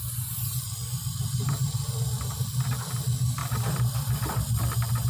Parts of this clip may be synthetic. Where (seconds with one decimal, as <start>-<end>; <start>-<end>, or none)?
none